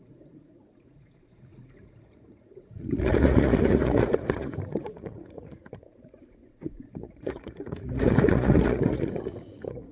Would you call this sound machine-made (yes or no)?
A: yes